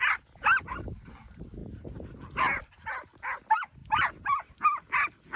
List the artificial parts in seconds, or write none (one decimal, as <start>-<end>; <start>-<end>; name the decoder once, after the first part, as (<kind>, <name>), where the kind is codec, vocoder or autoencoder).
none